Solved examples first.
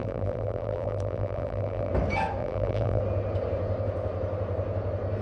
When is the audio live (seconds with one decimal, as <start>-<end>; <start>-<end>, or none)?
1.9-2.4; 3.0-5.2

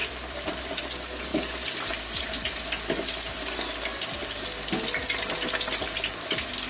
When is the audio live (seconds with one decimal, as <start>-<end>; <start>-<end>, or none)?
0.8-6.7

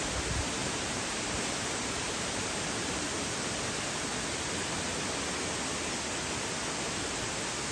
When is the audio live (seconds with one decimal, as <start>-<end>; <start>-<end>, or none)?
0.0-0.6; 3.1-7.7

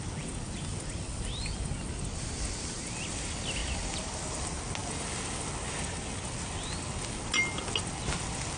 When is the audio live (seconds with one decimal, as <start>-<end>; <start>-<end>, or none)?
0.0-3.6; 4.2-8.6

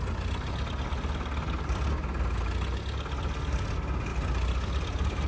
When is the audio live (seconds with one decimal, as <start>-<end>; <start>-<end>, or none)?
0.0-5.3